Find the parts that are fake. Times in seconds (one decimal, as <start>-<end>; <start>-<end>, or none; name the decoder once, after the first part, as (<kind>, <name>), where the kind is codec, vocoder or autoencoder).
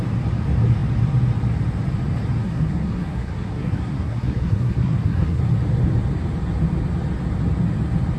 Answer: 2.4-5.4 (codec, SNAC)